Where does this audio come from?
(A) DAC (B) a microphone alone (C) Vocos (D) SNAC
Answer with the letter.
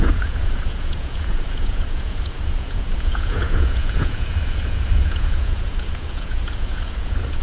C